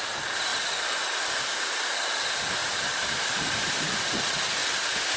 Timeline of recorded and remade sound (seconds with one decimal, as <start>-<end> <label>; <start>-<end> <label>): 0.0-4.6 recorded; 4.6-5.2 remade